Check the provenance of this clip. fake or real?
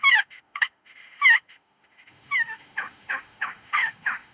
fake